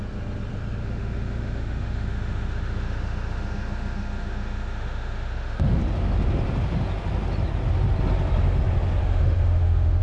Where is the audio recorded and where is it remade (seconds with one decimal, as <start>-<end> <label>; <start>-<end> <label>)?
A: 0.0-0.8 recorded; 0.8-5.8 remade; 5.8-9.0 recorded; 9.0-10.0 remade